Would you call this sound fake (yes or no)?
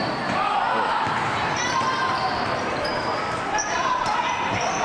yes